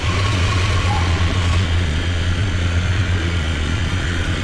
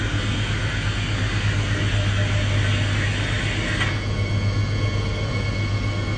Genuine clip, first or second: second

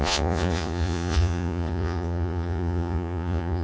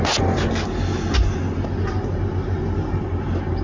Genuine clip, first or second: second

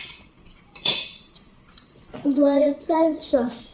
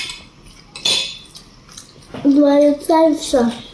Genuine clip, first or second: second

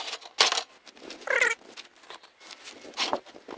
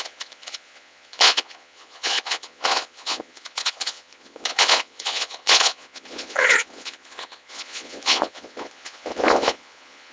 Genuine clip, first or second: first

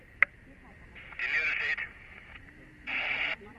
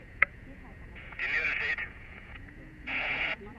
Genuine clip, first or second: first